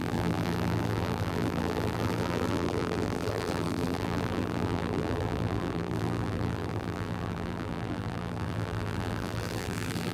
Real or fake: fake